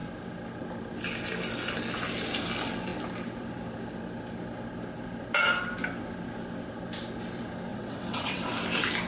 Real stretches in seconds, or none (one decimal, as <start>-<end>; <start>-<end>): 0.0-7.7; 8.4-9.1